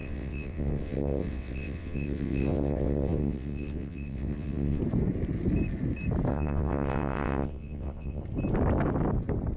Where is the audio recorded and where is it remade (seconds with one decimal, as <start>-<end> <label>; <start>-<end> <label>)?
0.0-4.8 remade; 4.8-6.3 recorded; 6.3-8.2 remade; 8.2-9.6 recorded